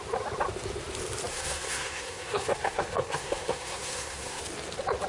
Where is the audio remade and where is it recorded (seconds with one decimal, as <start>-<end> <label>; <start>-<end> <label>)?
0.0-1.3 recorded; 1.3-4.4 remade; 4.4-5.1 recorded